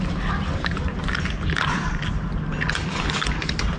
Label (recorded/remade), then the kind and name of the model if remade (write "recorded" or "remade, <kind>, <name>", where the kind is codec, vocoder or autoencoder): recorded